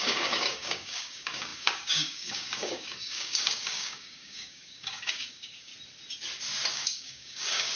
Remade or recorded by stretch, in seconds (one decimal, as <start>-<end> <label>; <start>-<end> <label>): 0.0-5.7 remade; 5.7-6.7 recorded; 6.7-7.8 remade